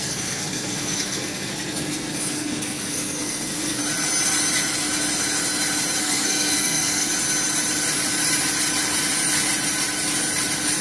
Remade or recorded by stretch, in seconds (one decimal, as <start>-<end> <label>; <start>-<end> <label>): 0.0-3.8 remade; 3.8-6.0 recorded; 6.0-7.1 remade; 7.1-10.8 recorded